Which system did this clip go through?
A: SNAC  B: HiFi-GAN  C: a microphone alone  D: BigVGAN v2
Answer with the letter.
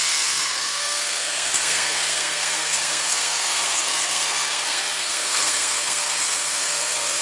A